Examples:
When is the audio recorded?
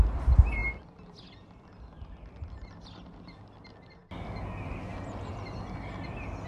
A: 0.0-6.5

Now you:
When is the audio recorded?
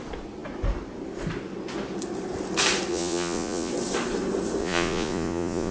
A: 0.0-2.9; 3.7-4.6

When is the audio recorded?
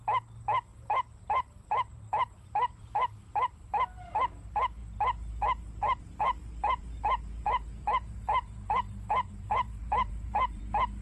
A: 0.0-0.7; 3.7-6.4; 10.6-11.0